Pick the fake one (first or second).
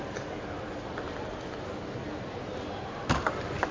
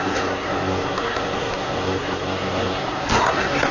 second